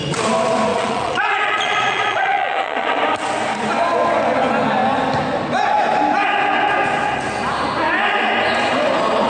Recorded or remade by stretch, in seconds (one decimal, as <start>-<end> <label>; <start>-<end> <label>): 0.0-0.7 recorded; 0.7-3.0 remade; 3.0-9.3 recorded